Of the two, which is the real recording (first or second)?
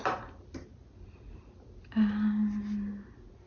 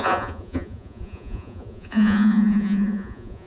first